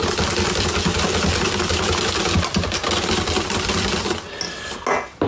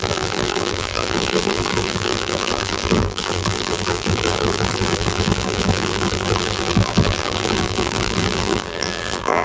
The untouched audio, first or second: first